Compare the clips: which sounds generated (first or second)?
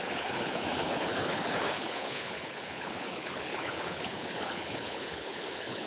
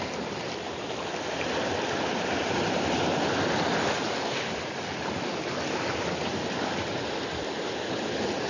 first